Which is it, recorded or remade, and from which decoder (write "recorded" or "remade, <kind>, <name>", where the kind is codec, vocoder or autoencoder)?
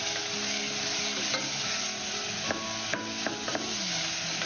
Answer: recorded